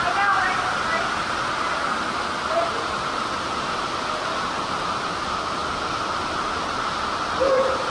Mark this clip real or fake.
real